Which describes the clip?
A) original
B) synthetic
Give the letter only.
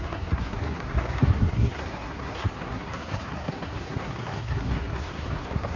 B